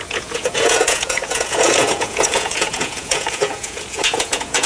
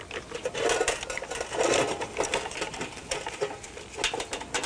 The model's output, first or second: first